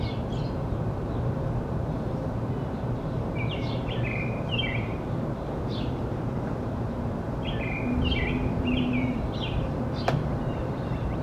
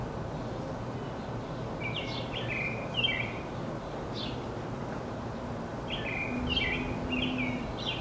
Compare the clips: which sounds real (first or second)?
second